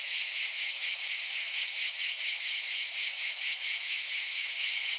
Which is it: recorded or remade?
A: remade